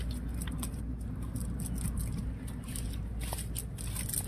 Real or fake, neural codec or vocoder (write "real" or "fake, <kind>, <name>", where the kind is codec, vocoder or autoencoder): real